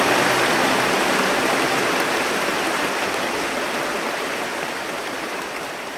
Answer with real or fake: real